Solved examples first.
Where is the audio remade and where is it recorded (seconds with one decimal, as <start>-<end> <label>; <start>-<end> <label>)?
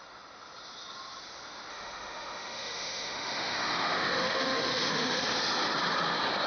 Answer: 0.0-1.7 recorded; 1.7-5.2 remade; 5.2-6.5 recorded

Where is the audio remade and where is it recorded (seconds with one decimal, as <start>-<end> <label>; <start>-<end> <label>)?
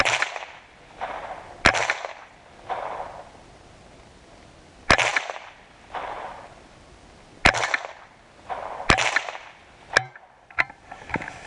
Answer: 0.0-11.5 recorded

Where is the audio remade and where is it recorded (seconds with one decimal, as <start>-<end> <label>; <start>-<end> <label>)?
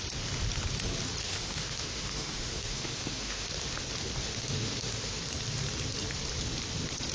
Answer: 0.0-1.2 recorded; 1.2-3.5 remade; 3.5-4.2 recorded; 4.2-5.2 remade; 5.2-7.1 recorded